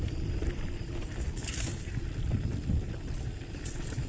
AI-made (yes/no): yes